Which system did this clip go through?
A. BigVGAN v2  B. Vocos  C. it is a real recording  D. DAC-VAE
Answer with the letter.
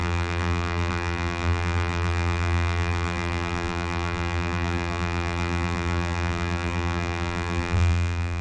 A